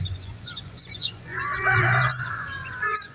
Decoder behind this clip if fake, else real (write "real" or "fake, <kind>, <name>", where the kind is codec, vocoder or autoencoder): fake, vocoder, Vocos